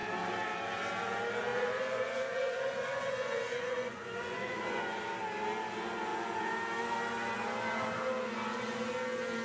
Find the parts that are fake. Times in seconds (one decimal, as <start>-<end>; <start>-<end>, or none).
1.5-5.0